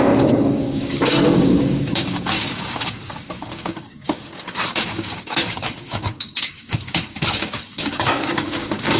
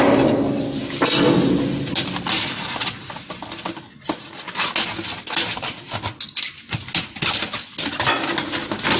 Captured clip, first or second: second